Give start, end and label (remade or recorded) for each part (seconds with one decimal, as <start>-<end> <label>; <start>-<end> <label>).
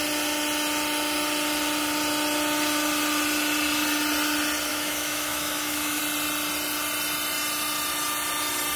0.0-4.7 recorded; 4.7-6.0 remade; 6.0-8.8 recorded